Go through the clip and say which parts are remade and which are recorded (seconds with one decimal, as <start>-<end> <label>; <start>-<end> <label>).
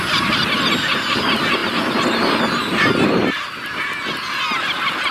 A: 0.0-5.1 recorded